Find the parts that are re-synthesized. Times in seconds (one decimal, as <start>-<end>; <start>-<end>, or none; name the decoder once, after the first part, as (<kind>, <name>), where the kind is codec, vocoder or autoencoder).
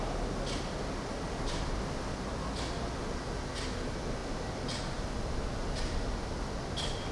none